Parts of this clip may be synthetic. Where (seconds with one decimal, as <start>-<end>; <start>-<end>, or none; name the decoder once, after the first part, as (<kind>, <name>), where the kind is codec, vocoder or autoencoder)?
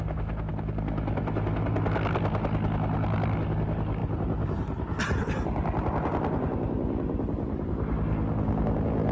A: none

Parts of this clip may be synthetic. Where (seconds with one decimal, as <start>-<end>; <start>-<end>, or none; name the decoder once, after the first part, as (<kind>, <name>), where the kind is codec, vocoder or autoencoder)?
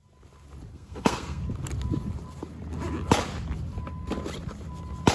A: 0.7-1.4 (codec, SNAC)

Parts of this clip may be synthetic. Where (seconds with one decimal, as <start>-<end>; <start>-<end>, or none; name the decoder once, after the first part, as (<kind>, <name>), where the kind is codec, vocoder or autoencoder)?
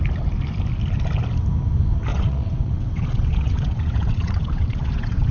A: 2.1-5.3 (vocoder, WaveNeXt)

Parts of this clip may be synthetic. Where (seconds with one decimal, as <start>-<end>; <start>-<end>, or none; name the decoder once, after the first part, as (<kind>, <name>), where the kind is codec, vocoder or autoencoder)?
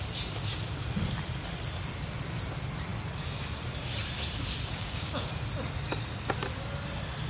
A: 4.7-5.3 (codec, DAC)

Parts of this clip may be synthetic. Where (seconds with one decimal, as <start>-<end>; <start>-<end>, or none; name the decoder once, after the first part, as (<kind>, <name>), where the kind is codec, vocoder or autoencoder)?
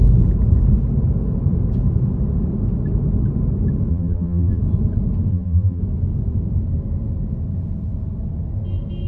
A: 3.9-4.6 (vocoder, BigVGAN v2); 5.3-5.8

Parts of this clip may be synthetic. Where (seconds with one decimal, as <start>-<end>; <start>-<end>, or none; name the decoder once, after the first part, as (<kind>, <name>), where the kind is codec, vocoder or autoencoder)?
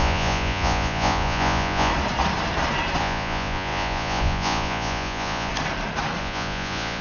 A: 0.0-1.9 (vocoder, Vocos); 3.0-5.5; 6.2-7.0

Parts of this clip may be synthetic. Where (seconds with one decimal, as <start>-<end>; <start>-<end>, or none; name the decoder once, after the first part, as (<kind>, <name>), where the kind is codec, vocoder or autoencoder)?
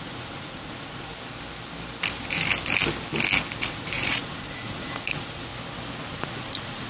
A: 0.0-1.1 (vocoder, Vocos); 3.6-5.5; 6.1-6.9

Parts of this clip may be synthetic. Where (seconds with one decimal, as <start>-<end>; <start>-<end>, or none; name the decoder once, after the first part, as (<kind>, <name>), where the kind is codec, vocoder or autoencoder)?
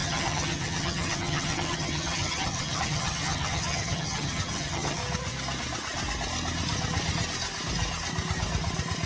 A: 0.0-5.0 (vocoder, HiFi-GAN)